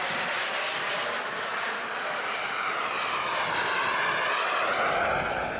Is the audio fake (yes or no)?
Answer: no